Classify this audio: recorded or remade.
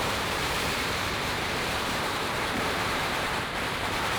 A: remade